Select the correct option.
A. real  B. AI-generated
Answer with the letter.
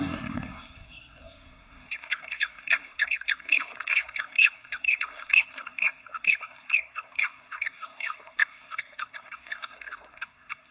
B